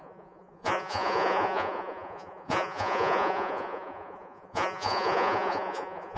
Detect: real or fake fake